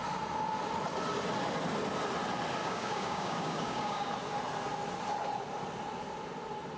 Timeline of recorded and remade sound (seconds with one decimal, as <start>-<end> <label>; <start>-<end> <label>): 0.0-2.6 recorded; 2.6-4.1 remade; 4.1-6.8 recorded